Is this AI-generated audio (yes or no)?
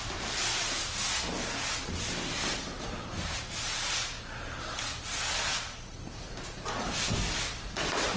no